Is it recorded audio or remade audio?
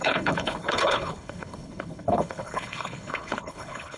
remade